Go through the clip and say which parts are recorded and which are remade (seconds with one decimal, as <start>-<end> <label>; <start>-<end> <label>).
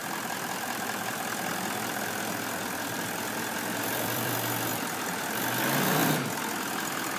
0.0-4.3 remade; 4.3-4.7 recorded; 4.7-5.2 remade; 5.2-7.2 recorded